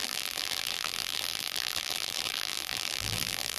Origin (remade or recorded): remade